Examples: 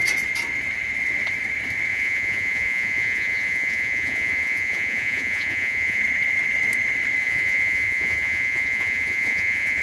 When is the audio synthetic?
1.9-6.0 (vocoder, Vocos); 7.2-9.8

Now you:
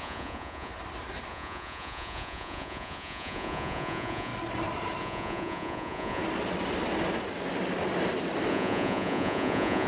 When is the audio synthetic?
0.0-0.7 (vocoder, Vocos); 1.3-4.3; 5.0-6.2; 8.5-9.9